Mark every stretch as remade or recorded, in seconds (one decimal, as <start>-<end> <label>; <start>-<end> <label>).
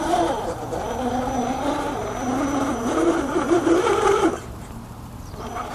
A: 0.0-2.0 remade; 2.0-2.6 recorded; 2.6-5.7 remade